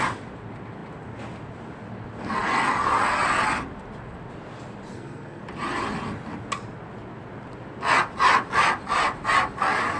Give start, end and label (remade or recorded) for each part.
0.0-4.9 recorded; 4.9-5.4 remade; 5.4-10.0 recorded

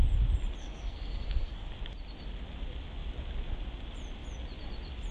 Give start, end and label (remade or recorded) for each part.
0.0-0.6 recorded; 0.6-1.7 remade; 1.7-5.1 recorded